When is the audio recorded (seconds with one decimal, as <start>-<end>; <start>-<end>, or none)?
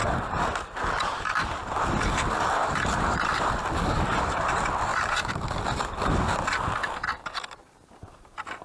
0.0-1.6; 2.1-4.9; 6.4-8.6